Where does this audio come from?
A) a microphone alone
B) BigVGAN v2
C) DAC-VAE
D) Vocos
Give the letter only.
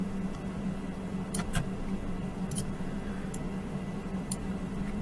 B